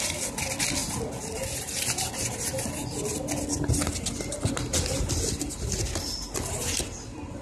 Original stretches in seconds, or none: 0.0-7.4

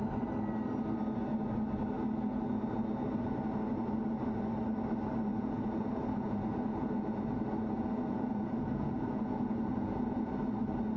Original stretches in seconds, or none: 0.0-5.3; 10.3-11.0